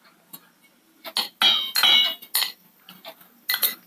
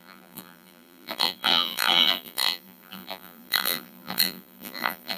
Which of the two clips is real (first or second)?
first